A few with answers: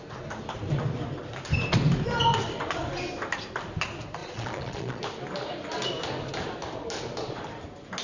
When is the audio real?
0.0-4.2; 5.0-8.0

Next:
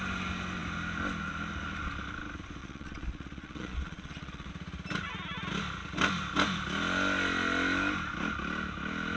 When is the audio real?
0.0-2.6; 4.5-9.2

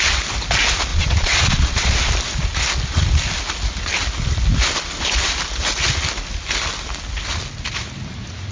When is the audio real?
0.0-0.9; 2.1-8.5

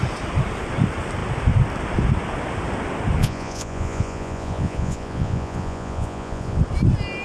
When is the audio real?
0.0-3.2; 6.6-7.2